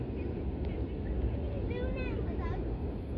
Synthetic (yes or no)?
no